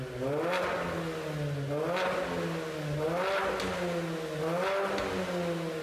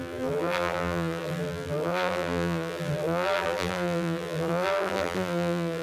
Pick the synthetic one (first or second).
second